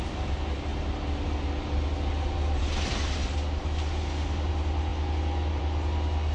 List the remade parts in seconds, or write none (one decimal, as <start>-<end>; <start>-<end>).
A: none